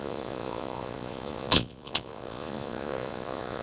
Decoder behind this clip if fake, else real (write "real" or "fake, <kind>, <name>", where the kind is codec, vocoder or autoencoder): fake, vocoder, Vocos